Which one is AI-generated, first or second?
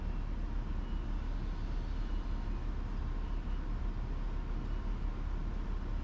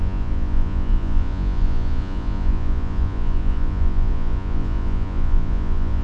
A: second